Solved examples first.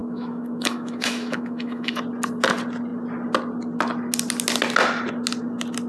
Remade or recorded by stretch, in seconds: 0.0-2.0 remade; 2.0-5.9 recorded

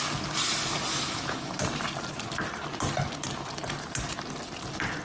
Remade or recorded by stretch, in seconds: 0.0-0.9 recorded; 0.9-1.6 remade; 1.6-5.0 recorded

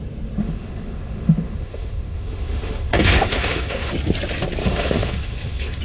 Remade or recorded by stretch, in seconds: 0.0-0.4 recorded; 0.4-3.9 remade; 3.9-4.6 recorded; 4.6-5.8 remade